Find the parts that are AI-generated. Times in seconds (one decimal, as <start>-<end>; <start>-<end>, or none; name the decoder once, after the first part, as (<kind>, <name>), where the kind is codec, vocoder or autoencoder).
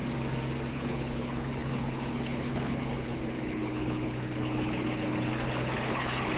0.7-6.4 (codec, HILCodec)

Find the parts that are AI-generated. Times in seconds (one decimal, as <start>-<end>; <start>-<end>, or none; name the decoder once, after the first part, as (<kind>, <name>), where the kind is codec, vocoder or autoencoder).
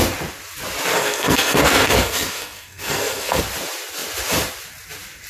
0.9-3.4 (codec, SNAC)